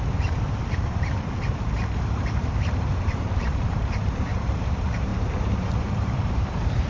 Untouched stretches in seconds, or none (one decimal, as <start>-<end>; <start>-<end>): none